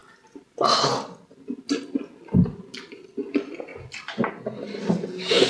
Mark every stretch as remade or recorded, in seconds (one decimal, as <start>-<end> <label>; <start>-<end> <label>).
0.0-5.5 recorded